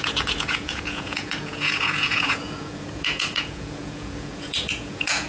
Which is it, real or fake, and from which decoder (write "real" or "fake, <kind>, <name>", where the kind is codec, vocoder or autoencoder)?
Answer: fake, vocoder, Vocos